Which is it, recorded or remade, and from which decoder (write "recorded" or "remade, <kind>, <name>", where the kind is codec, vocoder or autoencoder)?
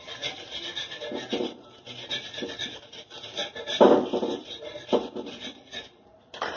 remade, vocoder, BigVGAN v2